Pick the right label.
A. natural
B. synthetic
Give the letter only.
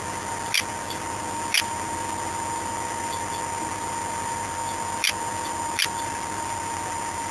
A